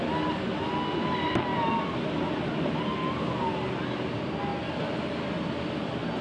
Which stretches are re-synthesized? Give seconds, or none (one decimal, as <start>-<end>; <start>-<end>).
none